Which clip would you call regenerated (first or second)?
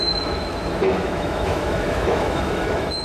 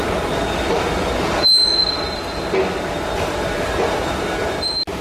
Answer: first